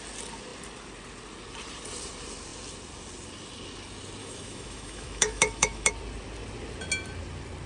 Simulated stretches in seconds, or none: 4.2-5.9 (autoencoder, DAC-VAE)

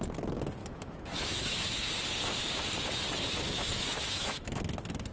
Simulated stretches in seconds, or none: 0.6-1.9 (autoencoder, DAC-VAE); 3.3-4.6

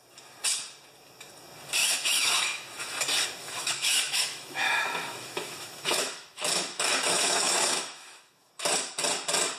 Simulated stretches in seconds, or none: 1.8-2.7 (autoencoder, DAC-VAE); 3.4-8.5

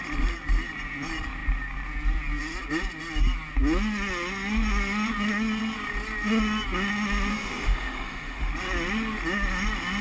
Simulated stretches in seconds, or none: 7.3-8.5 (autoencoder, DAC-VAE)

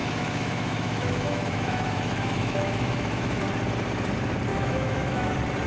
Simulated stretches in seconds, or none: 0.0-3.4 (autoencoder, DAC-VAE); 4.5-5.3

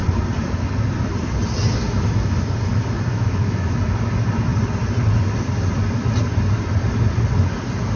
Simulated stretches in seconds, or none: 3.1-3.8 (autoencoder, DAC-VAE)

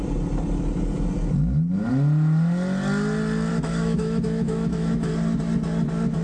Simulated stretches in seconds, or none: 3.5-5.1 (autoencoder, DAC-VAE)